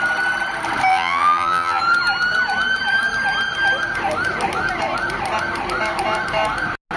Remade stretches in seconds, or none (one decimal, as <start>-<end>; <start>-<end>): 0.9-1.8